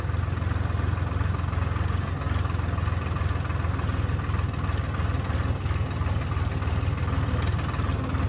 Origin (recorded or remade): recorded